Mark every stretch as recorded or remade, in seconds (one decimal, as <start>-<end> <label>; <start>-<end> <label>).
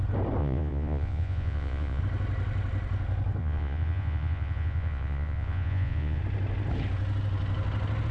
0.0-0.4 recorded; 0.4-2.0 remade; 2.0-3.4 recorded; 3.4-6.2 remade; 6.2-8.1 recorded